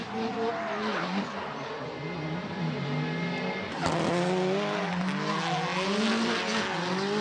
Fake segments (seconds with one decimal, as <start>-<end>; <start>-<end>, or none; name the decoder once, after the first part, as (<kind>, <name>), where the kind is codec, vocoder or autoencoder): none